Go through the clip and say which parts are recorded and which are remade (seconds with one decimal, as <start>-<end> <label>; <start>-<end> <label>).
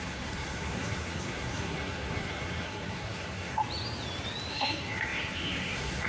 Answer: 0.0-3.6 remade; 3.6-4.5 recorded; 4.5-6.1 remade